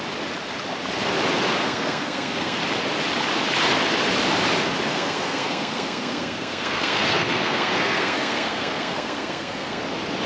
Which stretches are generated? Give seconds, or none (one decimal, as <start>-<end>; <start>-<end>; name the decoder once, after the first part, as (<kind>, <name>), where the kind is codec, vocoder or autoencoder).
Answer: 1.6-2.6 (codec, SNAC); 4.9-9.8